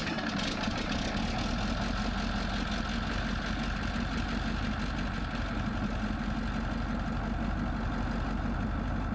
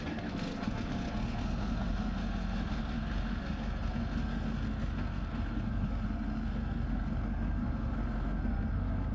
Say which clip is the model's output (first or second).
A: second